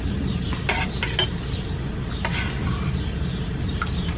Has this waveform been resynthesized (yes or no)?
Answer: no